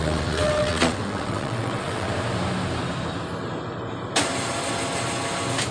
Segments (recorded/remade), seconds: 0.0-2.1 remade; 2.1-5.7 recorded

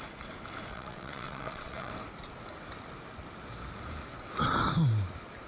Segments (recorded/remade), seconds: 0.0-0.7 recorded; 0.7-1.9 remade; 1.9-5.5 recorded

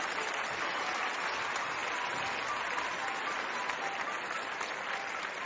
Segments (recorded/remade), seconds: 0.0-5.5 recorded

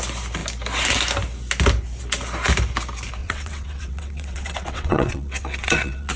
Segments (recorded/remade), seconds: 0.0-3.2 recorded; 3.2-6.2 remade